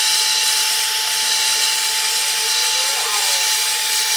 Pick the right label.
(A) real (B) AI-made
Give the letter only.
A